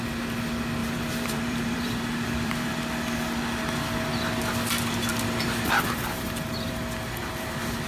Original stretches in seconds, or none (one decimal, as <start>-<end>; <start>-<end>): 0.0-0.8; 2.7-5.1; 6.8-7.9